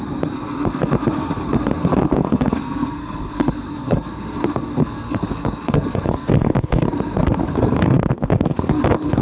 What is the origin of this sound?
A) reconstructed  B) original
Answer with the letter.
A